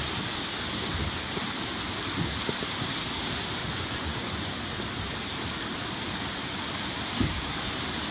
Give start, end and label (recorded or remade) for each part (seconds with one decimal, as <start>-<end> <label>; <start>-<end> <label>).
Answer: 0.0-3.6 recorded; 3.6-4.6 remade; 4.6-8.1 recorded